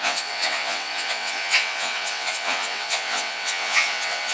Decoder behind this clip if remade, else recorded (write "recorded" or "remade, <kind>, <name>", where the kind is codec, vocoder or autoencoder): remade, vocoder, WaveNeXt